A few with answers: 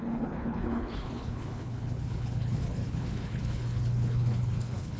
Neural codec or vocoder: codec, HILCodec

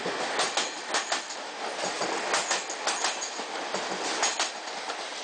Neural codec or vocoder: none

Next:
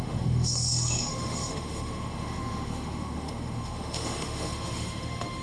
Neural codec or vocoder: autoencoder, DAC-VAE